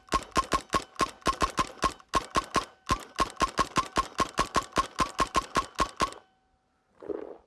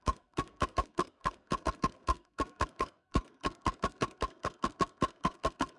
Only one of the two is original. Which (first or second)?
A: first